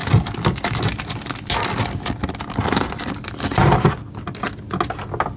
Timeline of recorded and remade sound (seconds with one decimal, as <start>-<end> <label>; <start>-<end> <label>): 0.0-5.4 recorded